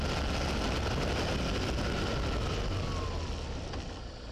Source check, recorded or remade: recorded